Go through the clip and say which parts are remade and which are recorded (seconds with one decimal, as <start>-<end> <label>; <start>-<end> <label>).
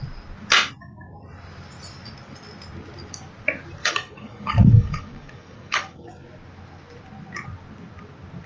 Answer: 0.0-3.8 recorded; 3.8-6.1 remade; 6.1-8.5 recorded